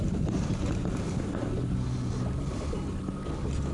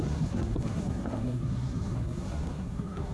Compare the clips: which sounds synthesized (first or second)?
second